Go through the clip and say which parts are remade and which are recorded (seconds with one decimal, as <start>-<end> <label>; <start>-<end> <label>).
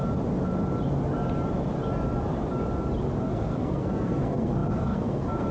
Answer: 0.0-3.2 recorded; 3.2-5.5 remade